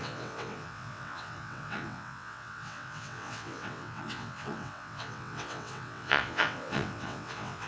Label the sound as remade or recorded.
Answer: remade